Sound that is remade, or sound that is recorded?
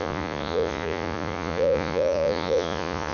remade